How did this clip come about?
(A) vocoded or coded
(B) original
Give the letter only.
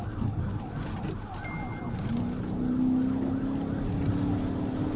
B